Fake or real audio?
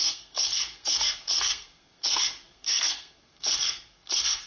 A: fake